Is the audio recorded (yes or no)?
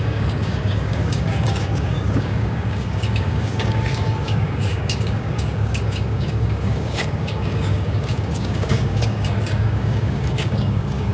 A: no